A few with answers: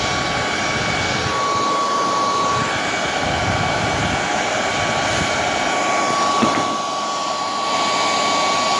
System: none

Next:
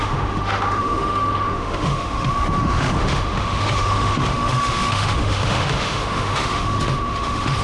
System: autoencoder, DAC-VAE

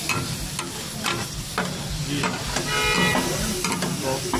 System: none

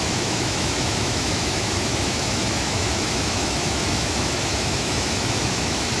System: autoencoder, DAC-VAE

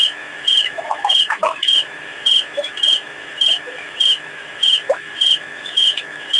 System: autoencoder, DAC-VAE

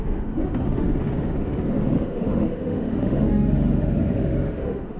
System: autoencoder, DAC-VAE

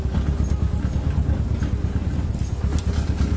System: none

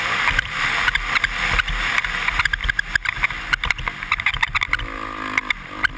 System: none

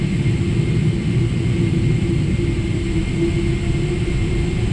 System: none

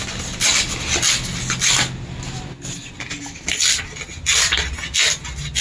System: none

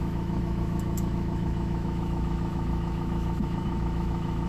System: autoencoder, DAC-VAE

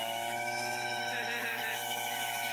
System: autoencoder, DAC-VAE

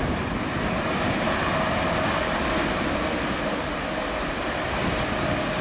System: none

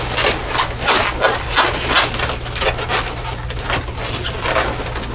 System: none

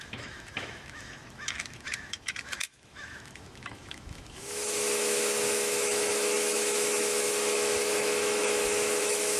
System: autoencoder, DAC-VAE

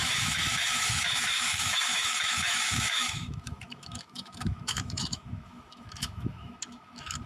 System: autoencoder, DAC-VAE